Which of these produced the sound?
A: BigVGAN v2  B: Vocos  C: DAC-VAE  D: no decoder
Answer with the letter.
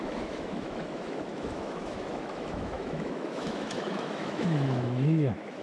C